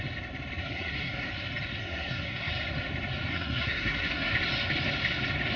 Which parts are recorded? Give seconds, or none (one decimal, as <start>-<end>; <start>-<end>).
0.0-0.6; 1.3-1.8; 2.5-3.3; 4.3-5.6